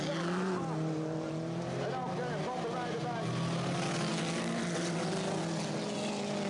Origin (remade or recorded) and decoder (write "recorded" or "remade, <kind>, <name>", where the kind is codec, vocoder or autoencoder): recorded